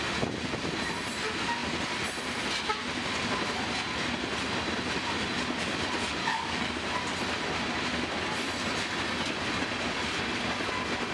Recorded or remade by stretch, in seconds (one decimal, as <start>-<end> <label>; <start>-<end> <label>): 0.0-6.2 recorded; 6.2-6.7 remade; 6.7-11.1 recorded